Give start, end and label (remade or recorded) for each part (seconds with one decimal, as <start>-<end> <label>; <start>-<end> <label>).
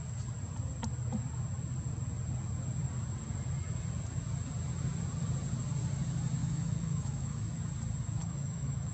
0.0-6.4 recorded; 6.4-7.5 remade; 7.5-8.2 recorded; 8.2-8.9 remade